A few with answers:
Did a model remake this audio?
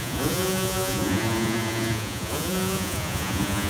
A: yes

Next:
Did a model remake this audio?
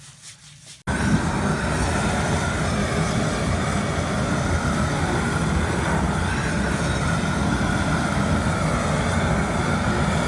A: no